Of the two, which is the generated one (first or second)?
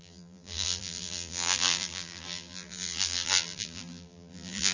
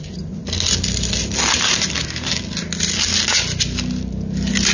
first